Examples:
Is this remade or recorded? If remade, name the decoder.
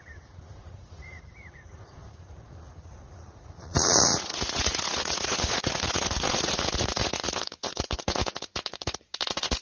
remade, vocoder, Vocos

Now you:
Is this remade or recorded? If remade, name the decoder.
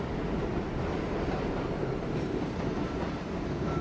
remade, vocoder, BigVGAN v2